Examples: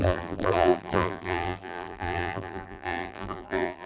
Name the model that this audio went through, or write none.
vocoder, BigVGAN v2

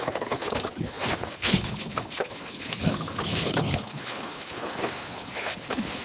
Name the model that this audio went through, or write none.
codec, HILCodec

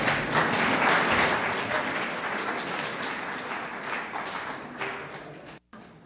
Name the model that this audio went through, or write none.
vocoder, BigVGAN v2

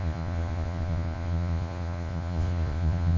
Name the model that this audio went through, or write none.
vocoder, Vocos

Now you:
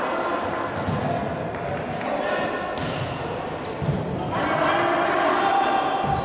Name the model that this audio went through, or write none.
none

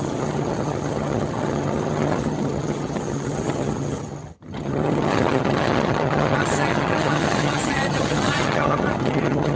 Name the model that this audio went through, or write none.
vocoder, HiFi-GAN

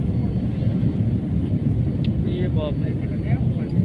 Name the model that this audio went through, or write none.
none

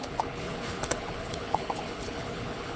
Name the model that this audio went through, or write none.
codec, HILCodec